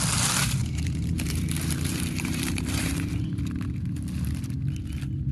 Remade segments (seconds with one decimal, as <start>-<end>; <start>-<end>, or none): 0.6-3.4